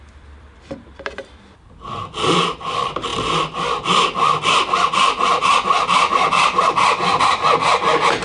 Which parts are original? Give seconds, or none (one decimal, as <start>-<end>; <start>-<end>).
3.1-7.2